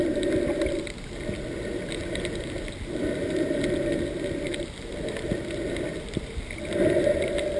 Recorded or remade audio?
recorded